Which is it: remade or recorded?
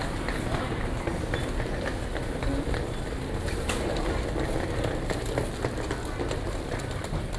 recorded